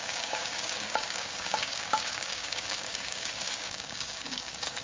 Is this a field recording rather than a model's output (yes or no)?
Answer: no